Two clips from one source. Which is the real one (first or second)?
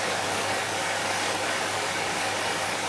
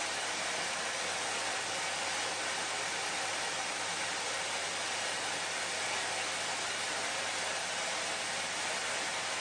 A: second